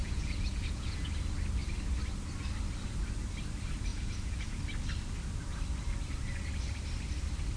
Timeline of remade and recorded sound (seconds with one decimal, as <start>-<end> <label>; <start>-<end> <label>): 0.0-1.1 remade; 1.1-3.9 recorded; 3.9-4.6 remade; 4.6-7.6 recorded